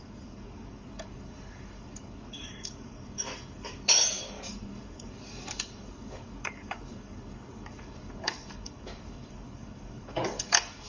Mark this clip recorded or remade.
remade